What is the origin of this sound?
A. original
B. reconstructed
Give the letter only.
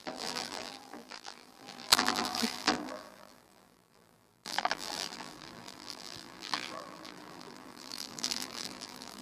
B